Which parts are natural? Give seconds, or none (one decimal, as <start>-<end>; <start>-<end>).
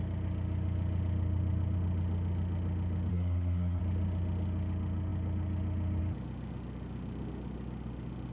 0.0-3.1; 3.8-8.3